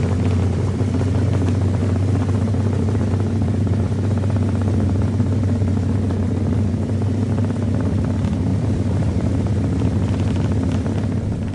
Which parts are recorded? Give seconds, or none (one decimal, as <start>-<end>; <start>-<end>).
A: 0.0-8.5; 9.3-11.5